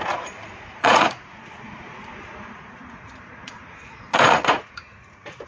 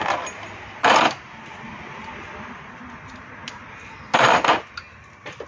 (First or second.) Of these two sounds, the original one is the second